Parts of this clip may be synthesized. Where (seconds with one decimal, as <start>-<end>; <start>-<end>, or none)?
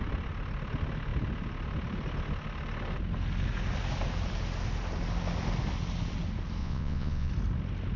6.6-7.3